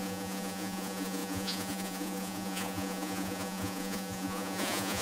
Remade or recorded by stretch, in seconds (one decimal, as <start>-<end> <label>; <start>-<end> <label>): 0.0-5.0 remade